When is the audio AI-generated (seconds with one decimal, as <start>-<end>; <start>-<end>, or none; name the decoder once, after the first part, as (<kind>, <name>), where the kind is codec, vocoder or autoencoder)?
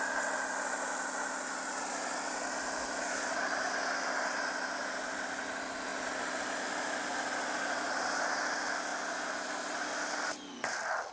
none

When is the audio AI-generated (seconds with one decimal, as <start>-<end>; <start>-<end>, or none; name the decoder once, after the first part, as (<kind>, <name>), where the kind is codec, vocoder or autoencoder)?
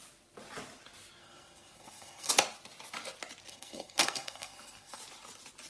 1.2-2.3 (codec, SNAC); 3.5-5.0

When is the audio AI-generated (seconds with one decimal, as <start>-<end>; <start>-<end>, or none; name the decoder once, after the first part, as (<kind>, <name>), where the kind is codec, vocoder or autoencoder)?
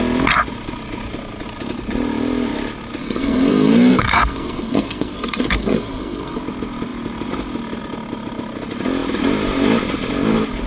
3.0-6.4 (codec, SNAC)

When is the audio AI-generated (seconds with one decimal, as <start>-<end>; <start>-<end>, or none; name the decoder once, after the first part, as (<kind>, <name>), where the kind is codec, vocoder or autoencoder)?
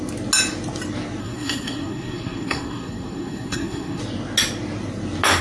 1.2-4.0 (codec, SNAC)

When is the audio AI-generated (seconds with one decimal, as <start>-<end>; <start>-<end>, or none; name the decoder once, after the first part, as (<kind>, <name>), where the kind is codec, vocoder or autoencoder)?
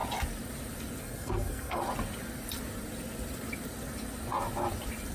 1.0-1.8 (codec, SNAC)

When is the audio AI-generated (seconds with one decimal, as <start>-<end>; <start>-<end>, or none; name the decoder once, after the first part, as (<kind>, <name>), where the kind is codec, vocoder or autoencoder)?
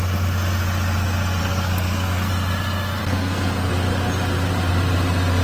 1.4-2.3 (codec, SNAC); 3.0-3.7